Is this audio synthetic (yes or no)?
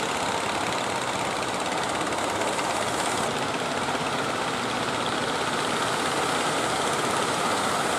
no